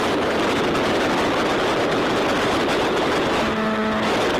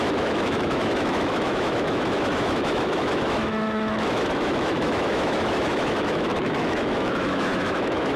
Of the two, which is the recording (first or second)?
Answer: first